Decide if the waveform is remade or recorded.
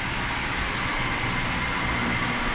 recorded